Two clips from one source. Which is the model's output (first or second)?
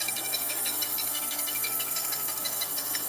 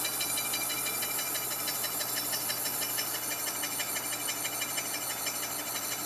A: first